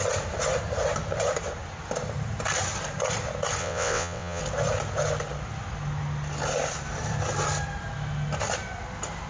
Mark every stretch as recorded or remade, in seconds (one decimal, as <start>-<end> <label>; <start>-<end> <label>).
0.0-3.6 recorded; 3.6-4.4 remade; 4.4-9.3 recorded